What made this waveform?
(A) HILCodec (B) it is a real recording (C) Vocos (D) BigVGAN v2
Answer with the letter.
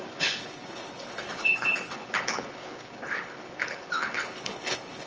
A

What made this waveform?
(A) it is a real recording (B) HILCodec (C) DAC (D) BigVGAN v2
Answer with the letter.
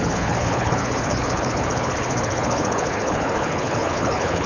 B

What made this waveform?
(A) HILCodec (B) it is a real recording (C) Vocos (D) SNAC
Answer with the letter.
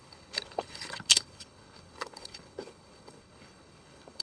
A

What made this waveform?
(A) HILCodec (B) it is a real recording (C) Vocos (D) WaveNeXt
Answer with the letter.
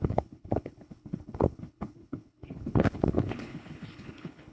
A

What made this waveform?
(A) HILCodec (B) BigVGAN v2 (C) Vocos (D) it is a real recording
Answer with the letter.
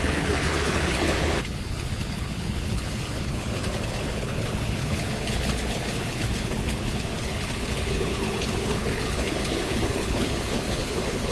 A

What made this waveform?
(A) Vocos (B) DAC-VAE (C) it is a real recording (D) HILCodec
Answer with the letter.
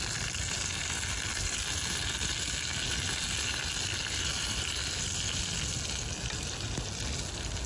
C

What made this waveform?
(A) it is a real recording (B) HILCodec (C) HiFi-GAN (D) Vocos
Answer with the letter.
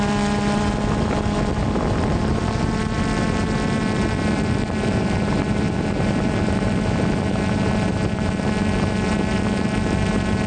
A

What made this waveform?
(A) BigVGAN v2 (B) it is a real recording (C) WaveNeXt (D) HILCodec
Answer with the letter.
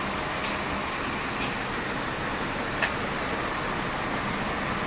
B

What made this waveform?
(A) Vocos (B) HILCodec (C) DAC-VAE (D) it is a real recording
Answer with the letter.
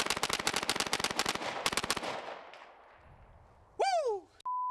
D